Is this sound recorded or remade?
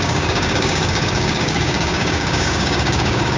remade